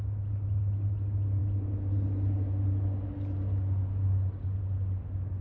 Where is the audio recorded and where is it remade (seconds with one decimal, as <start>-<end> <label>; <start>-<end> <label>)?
0.0-5.4 recorded